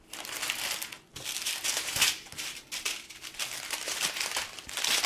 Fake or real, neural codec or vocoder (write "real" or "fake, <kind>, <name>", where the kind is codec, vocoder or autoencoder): real